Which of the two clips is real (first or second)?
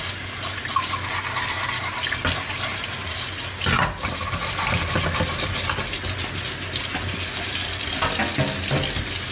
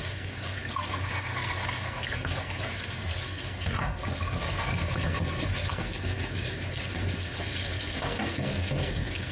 first